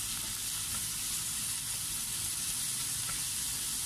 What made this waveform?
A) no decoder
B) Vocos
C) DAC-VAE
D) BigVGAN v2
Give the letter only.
A